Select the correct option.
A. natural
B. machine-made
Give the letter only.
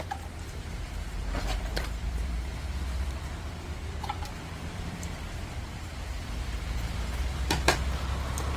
B